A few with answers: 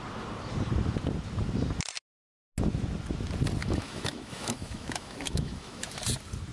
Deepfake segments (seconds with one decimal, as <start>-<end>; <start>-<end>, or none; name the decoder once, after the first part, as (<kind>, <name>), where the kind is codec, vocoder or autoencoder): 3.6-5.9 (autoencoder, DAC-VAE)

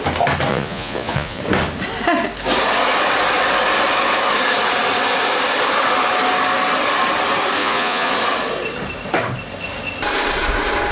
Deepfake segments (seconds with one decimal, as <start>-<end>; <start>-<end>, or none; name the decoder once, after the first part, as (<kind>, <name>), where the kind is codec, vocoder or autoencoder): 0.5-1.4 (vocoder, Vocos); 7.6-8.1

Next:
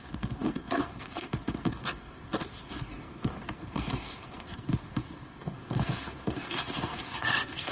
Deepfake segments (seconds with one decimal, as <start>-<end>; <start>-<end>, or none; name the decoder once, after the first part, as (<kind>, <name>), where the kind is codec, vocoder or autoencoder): 0.0-7.7 (codec, SNAC)

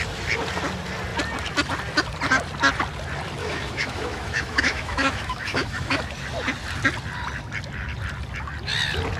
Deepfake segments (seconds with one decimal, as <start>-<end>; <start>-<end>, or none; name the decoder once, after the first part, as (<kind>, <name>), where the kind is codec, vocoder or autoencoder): 3.4-5.9 (autoencoder, DAC-VAE)

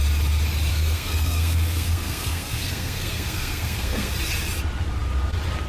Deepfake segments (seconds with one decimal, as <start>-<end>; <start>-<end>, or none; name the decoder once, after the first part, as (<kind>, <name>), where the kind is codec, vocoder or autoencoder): 0.7-4.1 (codec, SNAC)

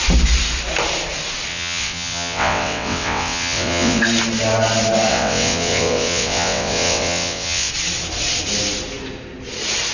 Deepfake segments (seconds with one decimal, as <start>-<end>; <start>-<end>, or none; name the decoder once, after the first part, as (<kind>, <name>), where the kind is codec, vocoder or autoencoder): 1.5-4.0 (vocoder, WaveNeXt); 5.1-7.7

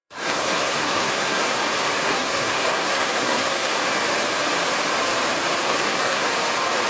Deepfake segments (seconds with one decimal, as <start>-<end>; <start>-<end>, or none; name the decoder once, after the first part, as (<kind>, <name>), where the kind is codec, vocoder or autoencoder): 0.0-1.6 (codec, SNAC); 2.0-3.8; 5.6-6.3